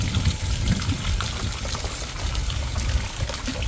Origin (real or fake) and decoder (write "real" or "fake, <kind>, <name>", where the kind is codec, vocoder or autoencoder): real